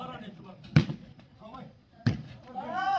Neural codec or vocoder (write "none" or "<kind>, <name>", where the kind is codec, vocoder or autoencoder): vocoder, Vocos